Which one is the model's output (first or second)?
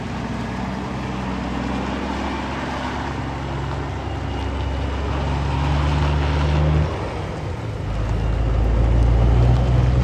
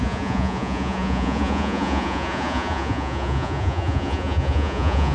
second